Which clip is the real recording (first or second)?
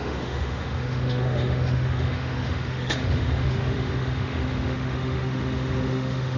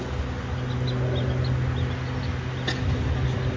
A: second